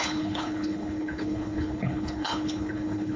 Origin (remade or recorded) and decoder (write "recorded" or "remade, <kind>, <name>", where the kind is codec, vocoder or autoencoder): remade, codec, HILCodec